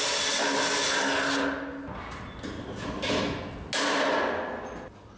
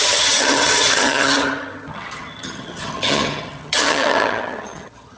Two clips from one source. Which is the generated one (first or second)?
second